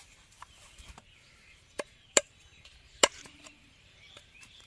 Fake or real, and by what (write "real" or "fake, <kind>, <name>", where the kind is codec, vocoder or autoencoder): fake, vocoder, BigVGAN v2